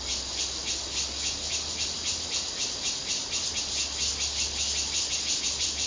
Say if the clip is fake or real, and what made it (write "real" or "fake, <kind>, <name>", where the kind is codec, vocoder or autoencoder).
real